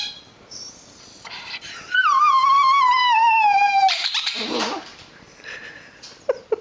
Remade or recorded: remade